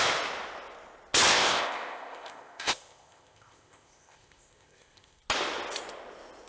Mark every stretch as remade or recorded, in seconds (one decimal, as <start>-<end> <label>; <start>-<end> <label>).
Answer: 0.0-1.3 recorded; 1.3-5.2 remade; 5.2-6.5 recorded